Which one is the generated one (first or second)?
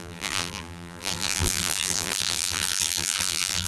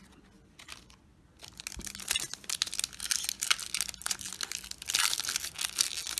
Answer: first